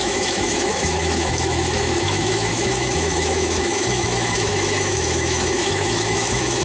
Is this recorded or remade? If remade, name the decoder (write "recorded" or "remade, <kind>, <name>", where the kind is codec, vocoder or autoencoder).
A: remade, autoencoder, DAC-VAE